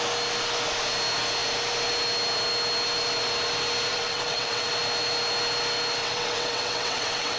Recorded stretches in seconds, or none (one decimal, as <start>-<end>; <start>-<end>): 0.0-3.9; 4.7-6.0